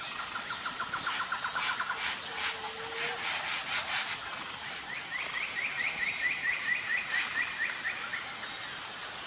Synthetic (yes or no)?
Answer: no